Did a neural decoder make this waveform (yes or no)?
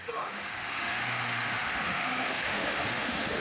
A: yes